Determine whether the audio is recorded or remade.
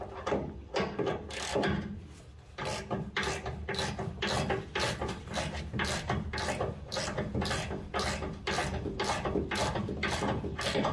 recorded